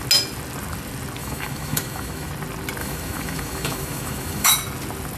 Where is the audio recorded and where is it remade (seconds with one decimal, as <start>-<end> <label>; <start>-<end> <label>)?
0.0-1.2 recorded; 1.2-2.3 remade; 2.3-2.8 recorded; 2.8-4.5 remade; 4.5-5.2 recorded